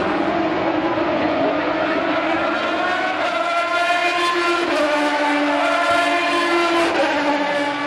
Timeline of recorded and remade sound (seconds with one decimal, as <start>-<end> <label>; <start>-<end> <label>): 0.0-2.0 remade; 2.0-7.9 recorded